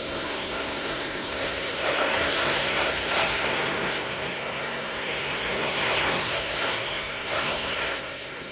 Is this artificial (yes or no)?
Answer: yes